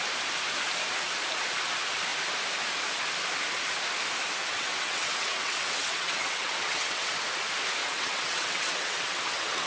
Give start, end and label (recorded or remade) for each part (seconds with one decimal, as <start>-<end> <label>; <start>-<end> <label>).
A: 0.0-4.4 recorded; 4.4-7.1 remade; 7.1-7.8 recorded; 7.8-9.7 remade